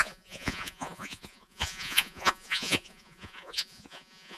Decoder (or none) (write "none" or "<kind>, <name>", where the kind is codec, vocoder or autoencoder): vocoder, Vocos